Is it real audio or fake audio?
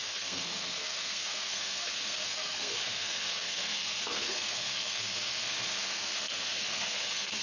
fake